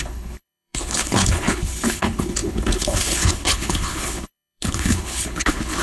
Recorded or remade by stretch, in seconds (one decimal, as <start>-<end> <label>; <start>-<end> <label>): 0.0-5.8 remade